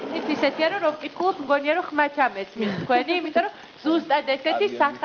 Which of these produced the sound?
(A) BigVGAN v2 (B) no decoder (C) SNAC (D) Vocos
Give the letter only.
B